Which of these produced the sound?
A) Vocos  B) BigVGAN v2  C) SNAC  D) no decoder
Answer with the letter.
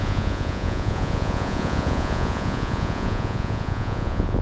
A